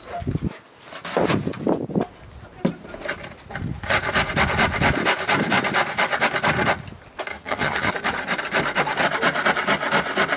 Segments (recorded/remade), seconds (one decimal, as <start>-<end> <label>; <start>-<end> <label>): 0.0-7.3 recorded; 7.3-7.9 remade; 7.9-10.4 recorded